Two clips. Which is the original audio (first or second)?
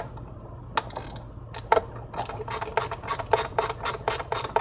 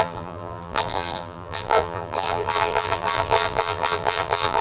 first